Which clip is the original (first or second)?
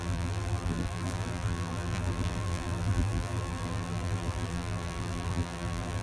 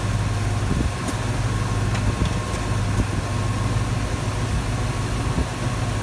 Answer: second